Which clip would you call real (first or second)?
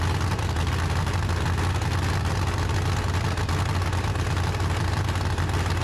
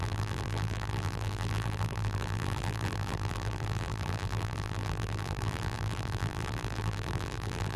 first